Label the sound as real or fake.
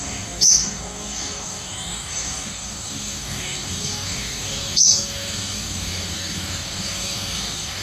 fake